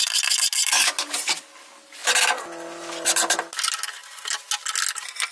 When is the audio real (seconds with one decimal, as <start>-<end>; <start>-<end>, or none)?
0.0-5.3